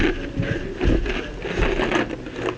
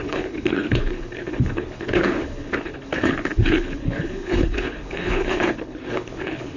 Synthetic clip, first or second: second